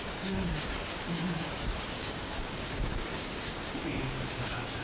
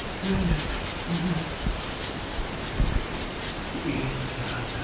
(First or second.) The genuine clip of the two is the second